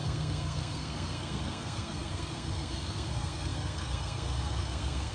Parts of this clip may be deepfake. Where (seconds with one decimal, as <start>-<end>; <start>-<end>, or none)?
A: 0.0-5.1

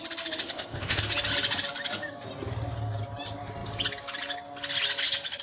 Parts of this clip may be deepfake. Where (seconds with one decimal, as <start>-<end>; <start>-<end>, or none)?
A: 0.4-1.0

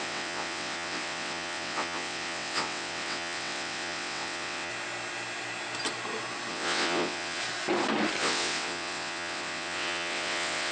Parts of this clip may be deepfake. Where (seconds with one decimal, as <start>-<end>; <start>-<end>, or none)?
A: 0.0-4.7; 6.5-7.4; 8.2-10.7

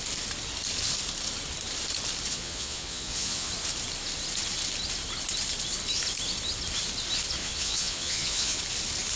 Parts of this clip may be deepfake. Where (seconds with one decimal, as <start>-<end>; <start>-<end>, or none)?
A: 2.3-3.5; 7.4-8.6

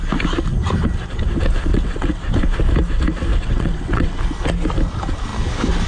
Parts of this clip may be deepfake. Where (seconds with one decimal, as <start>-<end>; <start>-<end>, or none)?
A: 1.7-2.3; 3.3-4.2

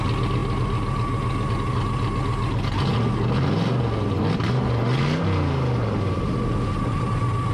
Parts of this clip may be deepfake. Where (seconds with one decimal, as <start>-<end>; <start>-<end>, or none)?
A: none

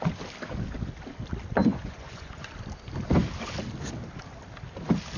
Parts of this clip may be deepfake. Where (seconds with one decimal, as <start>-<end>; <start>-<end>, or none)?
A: 1.6-2.5

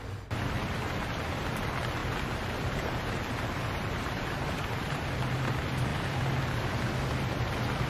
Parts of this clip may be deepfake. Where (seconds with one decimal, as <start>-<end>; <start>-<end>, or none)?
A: 2.0-5.1